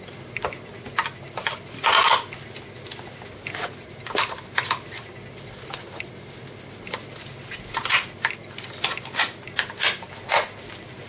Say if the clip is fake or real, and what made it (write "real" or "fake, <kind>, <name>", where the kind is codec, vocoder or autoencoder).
real